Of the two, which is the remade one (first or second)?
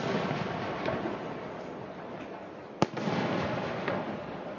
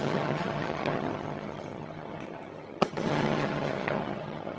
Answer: second